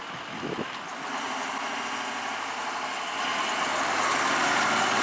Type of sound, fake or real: real